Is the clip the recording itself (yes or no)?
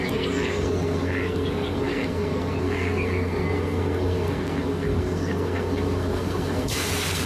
no